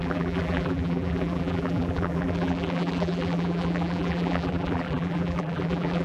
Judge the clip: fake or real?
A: fake